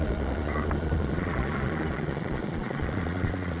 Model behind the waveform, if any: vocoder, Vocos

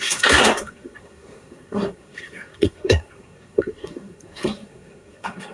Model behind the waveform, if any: codec, SNAC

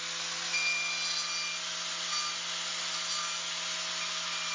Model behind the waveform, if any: none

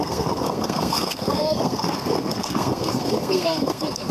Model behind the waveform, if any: codec, SNAC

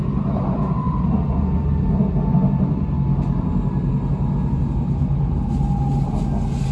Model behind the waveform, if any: none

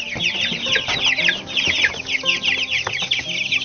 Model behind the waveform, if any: none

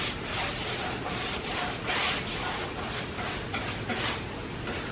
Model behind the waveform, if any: none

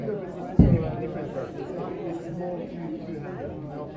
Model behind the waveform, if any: none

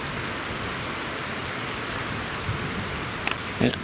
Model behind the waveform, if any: none